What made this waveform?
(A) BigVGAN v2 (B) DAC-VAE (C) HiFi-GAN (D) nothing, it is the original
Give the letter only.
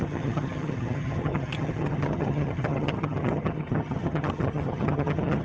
C